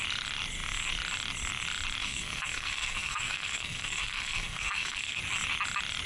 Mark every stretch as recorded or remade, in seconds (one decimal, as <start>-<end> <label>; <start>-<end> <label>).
0.0-2.0 recorded; 2.0-5.2 remade; 5.2-6.1 recorded